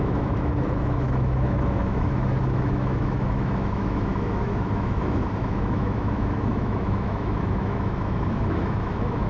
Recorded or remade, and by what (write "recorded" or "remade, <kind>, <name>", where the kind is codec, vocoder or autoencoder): remade, autoencoder, DAC-VAE